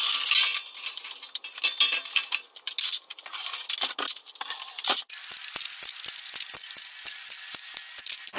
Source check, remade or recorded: recorded